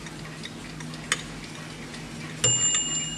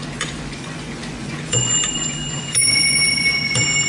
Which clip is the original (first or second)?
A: first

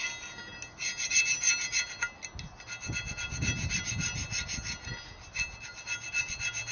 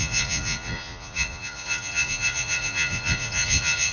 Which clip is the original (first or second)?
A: first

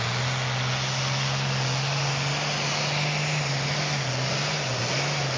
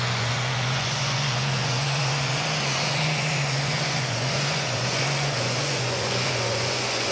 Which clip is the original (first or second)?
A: first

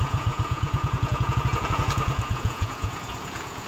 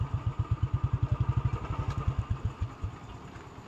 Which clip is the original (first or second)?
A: second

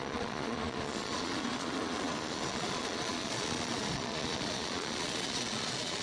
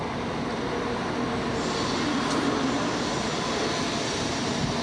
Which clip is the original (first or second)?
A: second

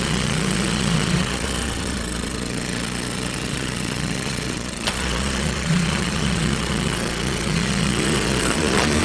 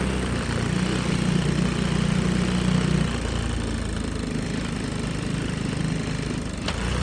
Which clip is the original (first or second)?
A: second